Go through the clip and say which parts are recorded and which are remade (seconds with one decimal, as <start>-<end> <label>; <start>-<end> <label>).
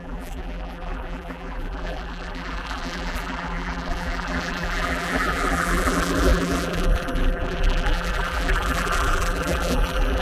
0.0-10.2 remade